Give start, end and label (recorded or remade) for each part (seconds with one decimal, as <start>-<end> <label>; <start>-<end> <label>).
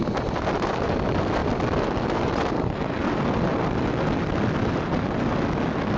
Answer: 0.0-6.0 recorded